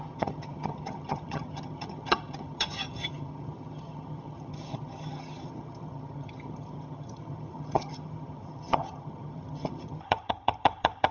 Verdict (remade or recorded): remade